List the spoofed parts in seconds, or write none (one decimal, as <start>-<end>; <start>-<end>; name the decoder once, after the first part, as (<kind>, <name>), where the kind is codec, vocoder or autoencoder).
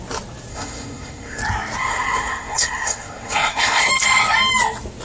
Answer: 0.5-1.4 (codec, SNAC); 1.8-3.9